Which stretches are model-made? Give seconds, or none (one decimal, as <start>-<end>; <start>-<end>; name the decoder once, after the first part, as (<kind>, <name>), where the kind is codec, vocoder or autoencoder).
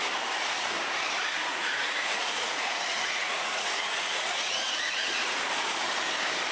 1.5-5.4 (vocoder, Vocos)